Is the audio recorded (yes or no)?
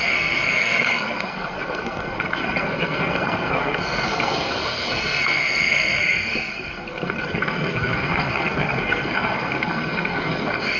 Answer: no